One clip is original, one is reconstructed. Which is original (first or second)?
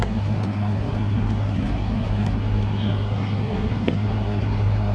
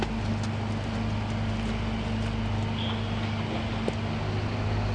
second